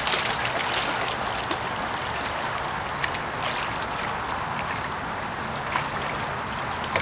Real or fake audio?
real